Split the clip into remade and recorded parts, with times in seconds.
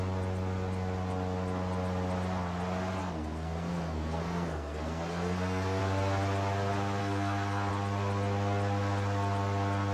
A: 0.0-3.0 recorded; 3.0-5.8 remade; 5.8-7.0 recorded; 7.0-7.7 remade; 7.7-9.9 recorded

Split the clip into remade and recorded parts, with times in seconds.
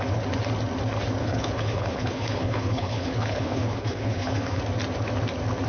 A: 0.0-1.2 recorded; 1.2-4.6 remade; 4.6-5.7 recorded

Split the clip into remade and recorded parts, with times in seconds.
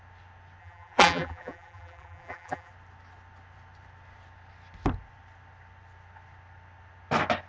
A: 0.0-0.6 recorded; 0.6-2.7 remade; 2.7-7.5 recorded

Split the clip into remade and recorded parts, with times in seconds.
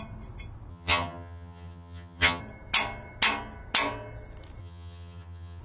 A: 0.0-0.7 recorded; 0.7-2.4 remade; 2.4-4.6 recorded; 4.6-5.6 remade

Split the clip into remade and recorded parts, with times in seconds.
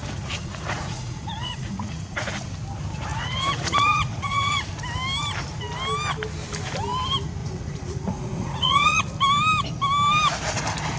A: 0.0-2.3 remade; 2.3-3.1 recorded; 3.1-4.7 remade; 4.7-7.4 recorded; 7.4-9.0 remade; 9.0-11.0 recorded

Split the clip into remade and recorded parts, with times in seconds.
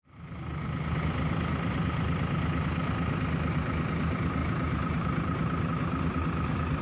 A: 0.0-4.4 recorded; 4.4-5.7 remade; 5.7-6.8 recorded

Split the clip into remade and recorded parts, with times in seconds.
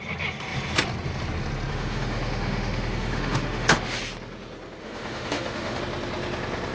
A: 0.0-1.7 recorded; 1.7-4.0 remade; 4.0-4.8 recorded; 4.8-5.8 remade; 5.8-6.7 recorded